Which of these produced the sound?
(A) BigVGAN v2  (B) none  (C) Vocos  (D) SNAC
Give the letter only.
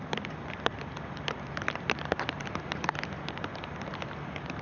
B